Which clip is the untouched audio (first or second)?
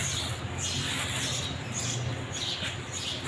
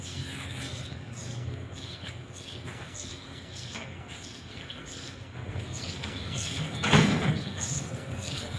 first